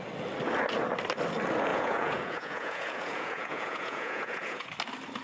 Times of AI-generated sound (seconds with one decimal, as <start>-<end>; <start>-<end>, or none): 1.7-4.7